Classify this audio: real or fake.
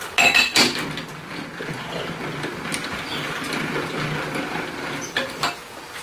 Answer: real